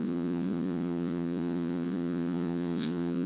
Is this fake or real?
fake